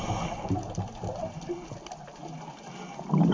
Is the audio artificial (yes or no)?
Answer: no